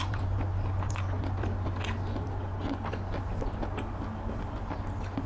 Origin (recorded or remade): recorded